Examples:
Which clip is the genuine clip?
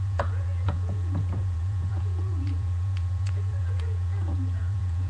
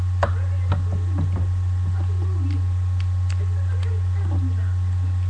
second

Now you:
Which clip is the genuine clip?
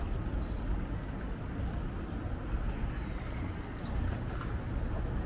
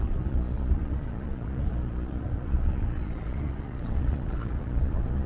first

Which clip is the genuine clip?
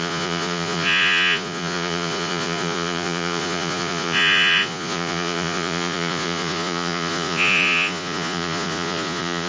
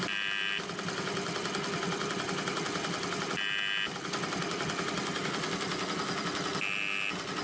second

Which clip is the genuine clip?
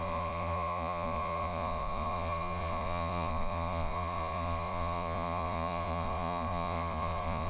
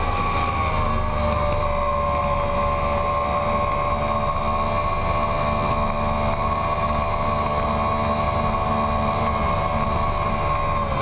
second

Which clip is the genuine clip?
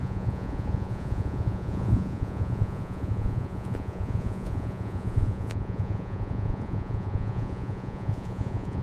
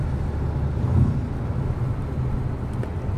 second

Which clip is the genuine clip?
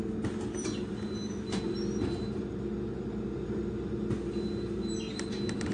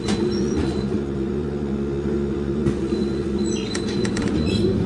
first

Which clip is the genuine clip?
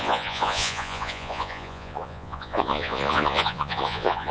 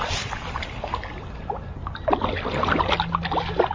second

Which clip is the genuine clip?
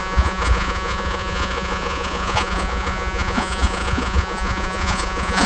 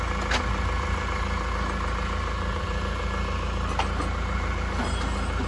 second